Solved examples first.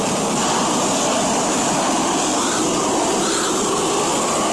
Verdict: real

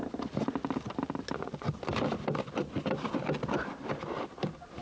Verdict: real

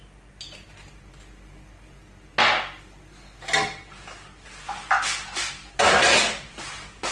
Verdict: real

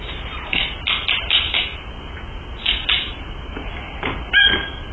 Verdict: real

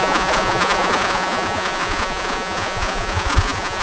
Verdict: fake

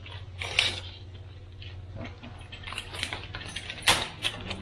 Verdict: real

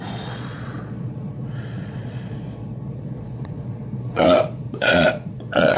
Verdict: fake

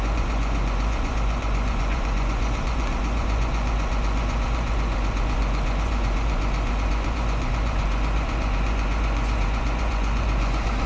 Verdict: fake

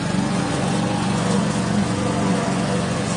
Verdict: fake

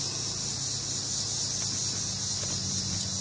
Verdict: real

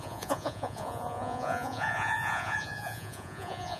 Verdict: fake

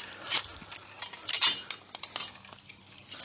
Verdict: real